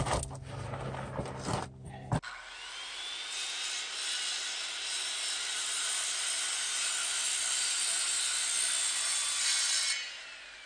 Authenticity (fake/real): real